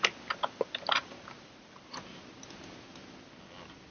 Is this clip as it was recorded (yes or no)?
yes